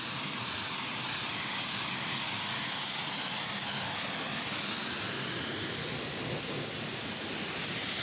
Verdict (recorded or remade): recorded